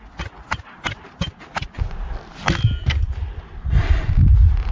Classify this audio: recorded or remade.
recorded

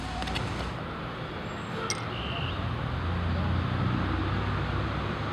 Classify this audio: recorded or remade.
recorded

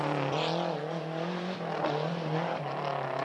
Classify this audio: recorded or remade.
recorded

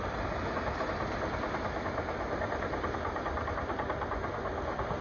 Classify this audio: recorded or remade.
recorded